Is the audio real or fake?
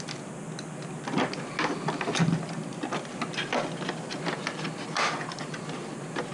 real